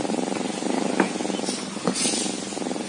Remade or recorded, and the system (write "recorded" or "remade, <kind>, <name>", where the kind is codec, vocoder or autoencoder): recorded